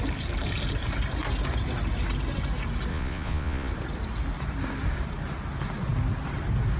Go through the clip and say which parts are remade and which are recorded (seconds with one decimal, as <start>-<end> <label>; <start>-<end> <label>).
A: 0.0-2.9 recorded; 2.9-3.7 remade; 3.7-6.8 recorded